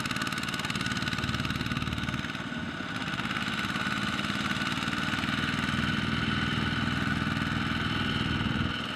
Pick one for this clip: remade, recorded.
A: recorded